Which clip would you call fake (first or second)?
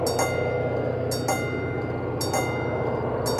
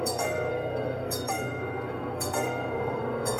second